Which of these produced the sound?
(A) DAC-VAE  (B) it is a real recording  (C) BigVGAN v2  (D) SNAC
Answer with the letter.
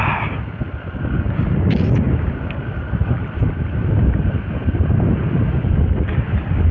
B